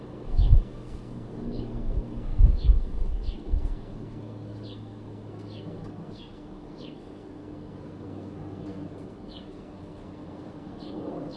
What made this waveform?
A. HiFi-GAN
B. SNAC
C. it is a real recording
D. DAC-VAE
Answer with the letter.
B